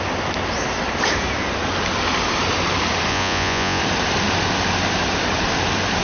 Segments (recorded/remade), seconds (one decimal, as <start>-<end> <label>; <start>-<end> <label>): 0.0-3.1 recorded; 3.1-3.8 remade; 3.8-6.0 recorded